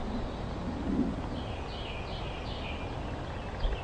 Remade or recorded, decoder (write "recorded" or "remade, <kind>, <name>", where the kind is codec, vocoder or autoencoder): recorded